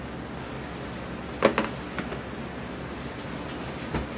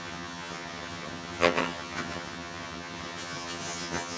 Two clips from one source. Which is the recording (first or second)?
first